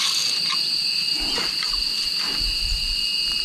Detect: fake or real real